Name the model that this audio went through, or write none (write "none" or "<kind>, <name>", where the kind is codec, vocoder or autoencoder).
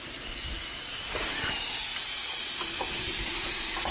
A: none